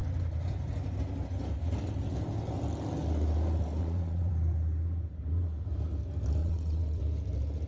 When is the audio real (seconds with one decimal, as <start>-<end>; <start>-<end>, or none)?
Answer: 0.0-3.8; 4.3-6.4; 7.0-7.7